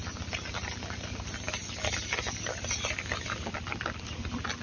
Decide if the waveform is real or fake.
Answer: real